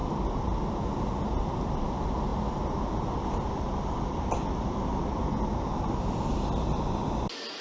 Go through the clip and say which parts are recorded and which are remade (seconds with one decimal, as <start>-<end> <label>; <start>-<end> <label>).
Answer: 0.0-7.6 recorded